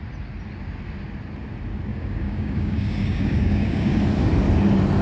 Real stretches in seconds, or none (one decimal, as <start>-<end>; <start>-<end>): 0.0-1.9; 4.0-5.0